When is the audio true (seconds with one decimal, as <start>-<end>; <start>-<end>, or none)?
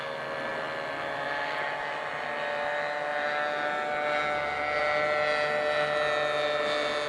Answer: 0.0-7.1